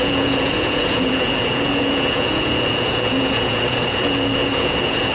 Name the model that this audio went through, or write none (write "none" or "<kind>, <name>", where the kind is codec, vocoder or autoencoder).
vocoder, Vocos